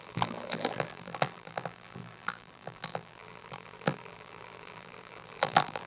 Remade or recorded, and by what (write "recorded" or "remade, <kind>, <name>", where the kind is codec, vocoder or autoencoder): remade, vocoder, BigVGAN v2